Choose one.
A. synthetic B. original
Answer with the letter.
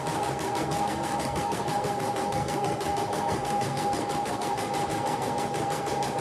A